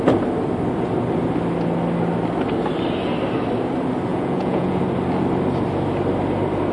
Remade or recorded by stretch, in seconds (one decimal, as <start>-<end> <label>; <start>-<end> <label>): 0.0-4.1 recorded; 4.1-4.8 remade; 4.8-6.7 recorded